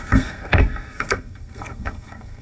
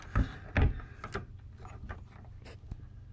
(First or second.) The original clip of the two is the second